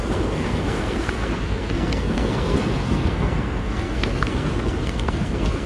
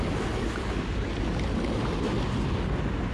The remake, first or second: first